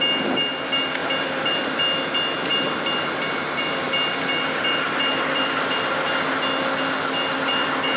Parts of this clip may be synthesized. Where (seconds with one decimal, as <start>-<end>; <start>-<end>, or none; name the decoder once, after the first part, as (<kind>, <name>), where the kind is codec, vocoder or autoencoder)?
none